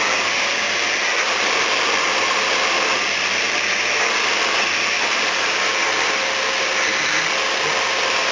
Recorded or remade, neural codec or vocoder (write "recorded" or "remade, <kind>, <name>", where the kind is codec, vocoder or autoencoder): remade, vocoder, BigVGAN v2